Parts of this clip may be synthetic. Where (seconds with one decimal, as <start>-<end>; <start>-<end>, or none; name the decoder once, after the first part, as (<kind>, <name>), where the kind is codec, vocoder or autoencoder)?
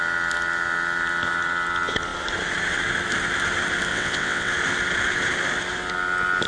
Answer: 3.9-4.5 (vocoder, WaveNeXt)